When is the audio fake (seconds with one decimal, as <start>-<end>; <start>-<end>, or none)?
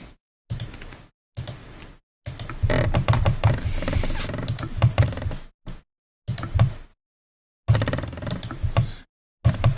none